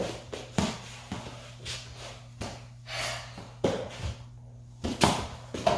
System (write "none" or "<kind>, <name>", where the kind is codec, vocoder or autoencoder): none